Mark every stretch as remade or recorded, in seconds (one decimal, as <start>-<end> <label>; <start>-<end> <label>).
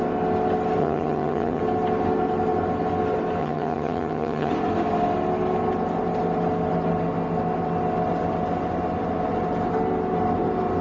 0.0-0.8 recorded; 0.8-1.6 remade; 1.6-3.4 recorded; 3.4-4.5 remade; 4.5-10.8 recorded